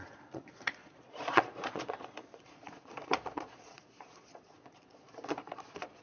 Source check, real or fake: fake